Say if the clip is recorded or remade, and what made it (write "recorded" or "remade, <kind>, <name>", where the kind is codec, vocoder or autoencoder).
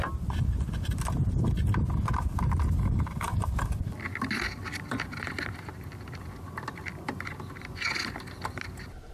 recorded